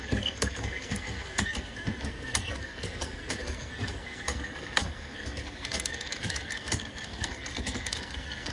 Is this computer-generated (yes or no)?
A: yes